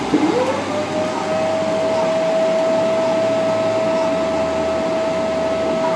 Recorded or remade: recorded